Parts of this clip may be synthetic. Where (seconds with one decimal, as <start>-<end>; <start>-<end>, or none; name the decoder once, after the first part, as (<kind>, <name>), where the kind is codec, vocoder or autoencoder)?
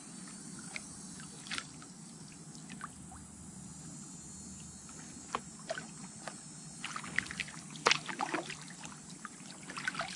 none